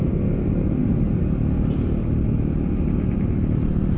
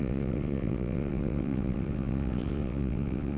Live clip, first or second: first